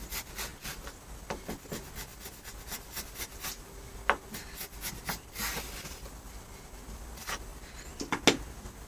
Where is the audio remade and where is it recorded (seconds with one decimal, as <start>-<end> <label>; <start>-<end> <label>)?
0.0-0.5 recorded; 0.5-1.0 remade; 1.0-7.5 recorded; 7.5-8.2 remade; 8.2-8.9 recorded